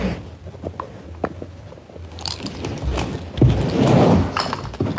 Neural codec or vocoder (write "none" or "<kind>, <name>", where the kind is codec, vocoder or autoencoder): none